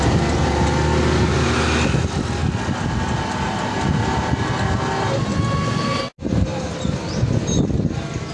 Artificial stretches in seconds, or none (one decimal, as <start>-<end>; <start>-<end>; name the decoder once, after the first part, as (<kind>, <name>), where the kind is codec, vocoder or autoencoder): none